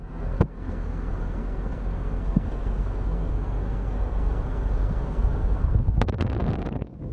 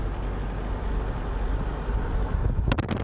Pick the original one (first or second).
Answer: second